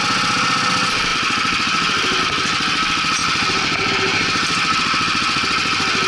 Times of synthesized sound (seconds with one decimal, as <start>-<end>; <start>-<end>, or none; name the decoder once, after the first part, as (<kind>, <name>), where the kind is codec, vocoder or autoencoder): 3.2-3.9 (vocoder, BigVGAN v2)